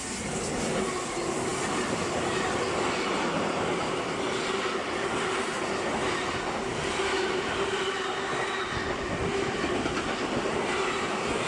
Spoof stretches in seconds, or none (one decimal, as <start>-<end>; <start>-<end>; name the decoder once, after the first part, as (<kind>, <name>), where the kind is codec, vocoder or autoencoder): none